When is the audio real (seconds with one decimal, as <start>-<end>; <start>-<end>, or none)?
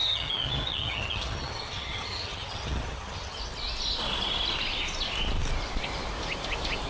3.4-6.9